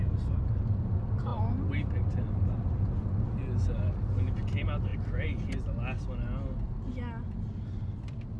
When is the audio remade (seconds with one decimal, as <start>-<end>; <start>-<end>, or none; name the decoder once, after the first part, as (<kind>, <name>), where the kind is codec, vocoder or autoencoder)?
none